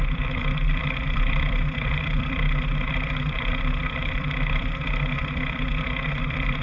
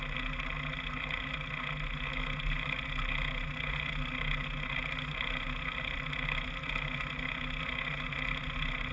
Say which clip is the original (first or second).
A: second